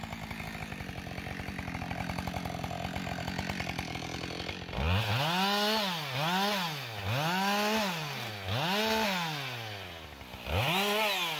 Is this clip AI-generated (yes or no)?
no